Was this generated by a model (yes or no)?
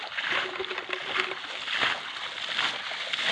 no